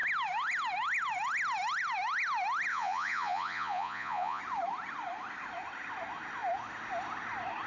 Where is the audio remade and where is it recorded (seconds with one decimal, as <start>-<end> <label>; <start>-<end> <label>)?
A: 0.0-2.7 recorded; 2.7-4.4 remade; 4.4-7.7 recorded